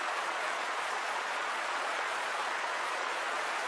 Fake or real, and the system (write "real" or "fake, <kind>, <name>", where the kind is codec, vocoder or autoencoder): fake, vocoder, Vocos